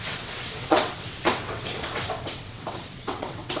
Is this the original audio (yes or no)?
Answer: no